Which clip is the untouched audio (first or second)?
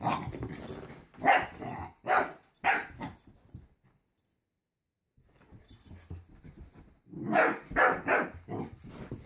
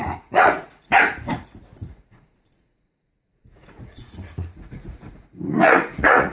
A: first